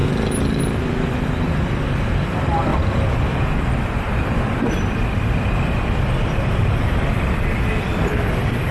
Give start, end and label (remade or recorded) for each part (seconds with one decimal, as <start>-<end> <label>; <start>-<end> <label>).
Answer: 0.0-0.8 recorded; 0.8-2.7 remade; 2.7-3.4 recorded; 3.4-8.7 remade